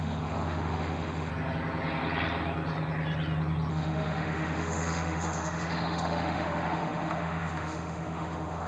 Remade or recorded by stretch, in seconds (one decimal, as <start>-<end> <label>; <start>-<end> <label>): 0.0-1.3 remade; 1.3-3.7 recorded; 3.7-8.7 remade